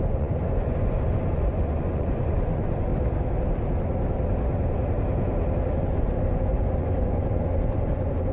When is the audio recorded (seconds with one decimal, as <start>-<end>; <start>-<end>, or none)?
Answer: 2.9-5.7